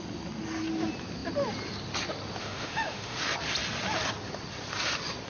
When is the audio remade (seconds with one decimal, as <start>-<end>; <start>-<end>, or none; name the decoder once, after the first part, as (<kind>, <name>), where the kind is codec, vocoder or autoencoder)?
2.4-3.2 (autoencoder, DAC-VAE)